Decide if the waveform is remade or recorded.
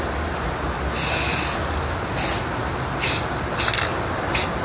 recorded